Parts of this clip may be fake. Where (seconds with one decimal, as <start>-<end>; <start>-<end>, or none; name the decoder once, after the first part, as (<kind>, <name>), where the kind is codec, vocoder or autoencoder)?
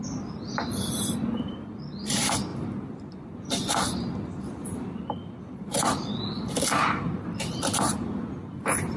0.0-9.0 (vocoder, BigVGAN v2)